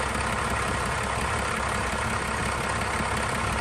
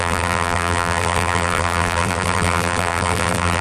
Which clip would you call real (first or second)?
first